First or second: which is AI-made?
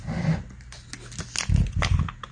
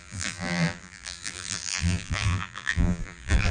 second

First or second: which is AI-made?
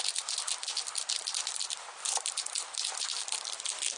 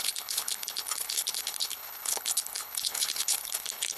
second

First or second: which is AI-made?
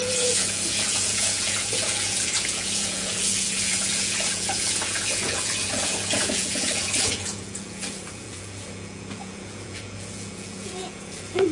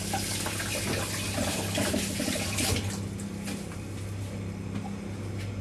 first